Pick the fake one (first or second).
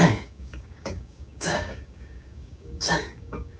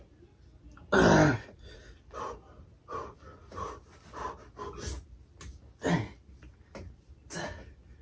first